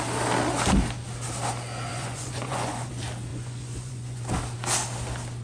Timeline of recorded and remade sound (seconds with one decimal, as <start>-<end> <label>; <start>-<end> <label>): 0.0-1.9 recorded; 1.9-2.9 remade; 2.9-3.3 recorded; 3.3-4.2 remade; 4.2-5.4 recorded